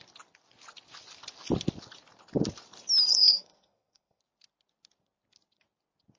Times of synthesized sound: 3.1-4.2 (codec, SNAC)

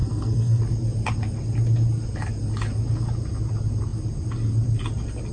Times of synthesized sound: 0.0-0.6 (codec, SNAC)

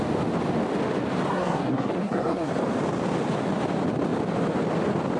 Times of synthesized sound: 1.3-2.5 (codec, SNAC)

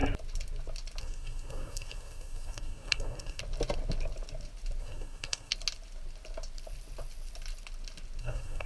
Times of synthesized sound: 1.0-3.4 (codec, SNAC); 4.8-5.5; 8.2-8.7

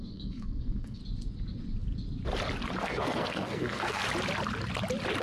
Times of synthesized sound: 0.0-1.0 (codec, SNAC); 2.8-4.0

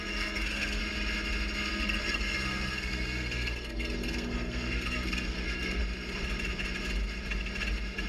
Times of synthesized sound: 0.0-0.8 (codec, SNAC); 1.7-5.8

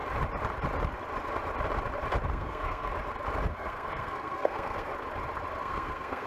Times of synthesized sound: 2.3-2.9 (codec, SNAC); 3.5-4.9; 5.6-6.3